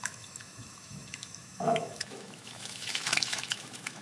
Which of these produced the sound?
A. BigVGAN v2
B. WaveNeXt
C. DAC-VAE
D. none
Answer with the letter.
C